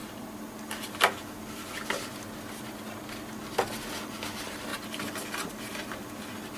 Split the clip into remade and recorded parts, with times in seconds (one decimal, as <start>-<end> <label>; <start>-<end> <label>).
0.0-6.6 recorded